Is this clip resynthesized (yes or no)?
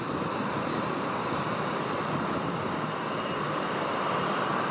yes